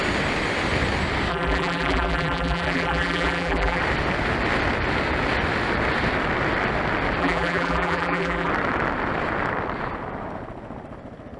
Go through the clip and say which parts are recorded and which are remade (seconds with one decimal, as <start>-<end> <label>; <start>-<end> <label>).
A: 0.0-1.3 recorded; 1.3-3.8 remade; 3.8-7.2 recorded; 7.2-8.5 remade; 8.5-11.4 recorded